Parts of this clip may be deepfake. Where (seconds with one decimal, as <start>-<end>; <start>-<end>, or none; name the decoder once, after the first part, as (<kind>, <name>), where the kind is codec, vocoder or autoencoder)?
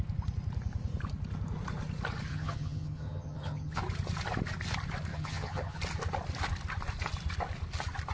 2.3-3.8 (vocoder, HiFi-GAN); 5.1-5.8